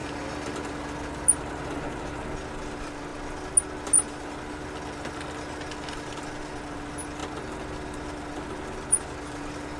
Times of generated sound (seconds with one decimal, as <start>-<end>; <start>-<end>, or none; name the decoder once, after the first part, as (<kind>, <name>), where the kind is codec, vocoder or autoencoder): none